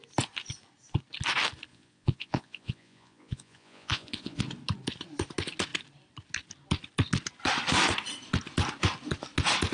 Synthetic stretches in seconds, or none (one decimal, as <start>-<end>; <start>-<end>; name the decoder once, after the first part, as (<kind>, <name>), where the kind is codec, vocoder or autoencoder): 1.7-4.4 (vocoder, Vocos)